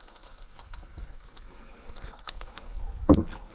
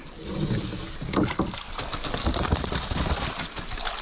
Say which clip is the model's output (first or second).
first